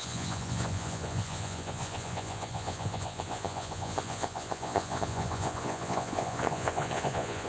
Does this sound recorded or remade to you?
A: remade